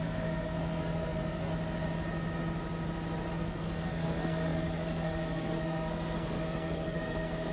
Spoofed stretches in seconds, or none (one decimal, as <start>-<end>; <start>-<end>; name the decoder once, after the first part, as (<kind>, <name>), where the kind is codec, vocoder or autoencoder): 0.0-1.5 (codec, SNAC); 3.3-7.5